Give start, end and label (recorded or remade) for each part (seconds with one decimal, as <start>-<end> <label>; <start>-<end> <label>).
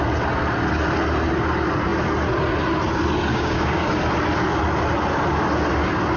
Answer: 0.0-3.3 recorded; 3.3-3.9 remade; 3.9-6.2 recorded